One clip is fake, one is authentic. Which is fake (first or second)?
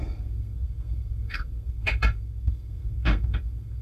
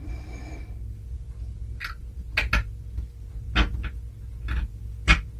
first